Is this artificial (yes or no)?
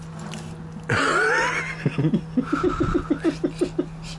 no